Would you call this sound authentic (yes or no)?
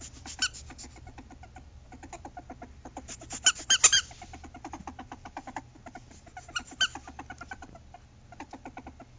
yes